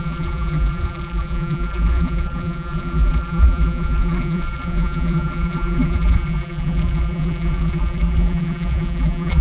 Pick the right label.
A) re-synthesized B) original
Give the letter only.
A